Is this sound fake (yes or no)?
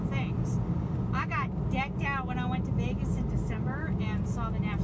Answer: no